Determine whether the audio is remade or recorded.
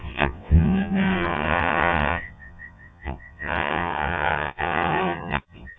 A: remade